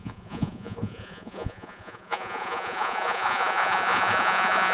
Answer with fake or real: fake